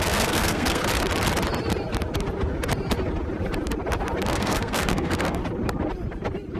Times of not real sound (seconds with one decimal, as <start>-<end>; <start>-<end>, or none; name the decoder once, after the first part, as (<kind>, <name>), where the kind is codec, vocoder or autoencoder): 0.0-0.8 (codec, SNAC); 4.3-5.4